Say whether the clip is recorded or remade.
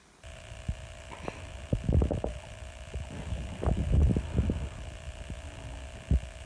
recorded